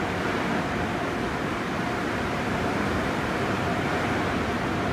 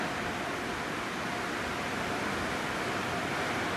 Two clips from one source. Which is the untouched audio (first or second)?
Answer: second